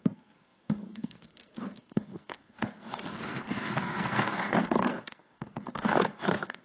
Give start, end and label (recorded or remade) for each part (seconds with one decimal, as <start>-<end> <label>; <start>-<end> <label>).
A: 0.0-6.6 remade